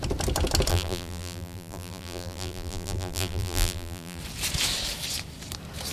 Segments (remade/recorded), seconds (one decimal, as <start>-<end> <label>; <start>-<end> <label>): 0.0-0.7 recorded; 0.7-4.2 remade; 4.2-5.9 recorded